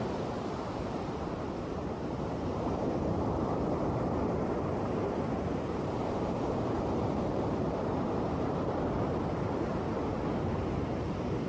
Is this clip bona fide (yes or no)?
no